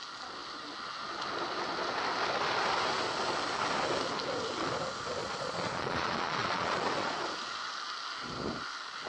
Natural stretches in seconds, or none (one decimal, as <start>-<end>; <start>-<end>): 0.0-5.2; 7.2-9.1